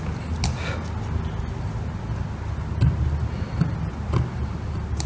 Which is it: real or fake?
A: real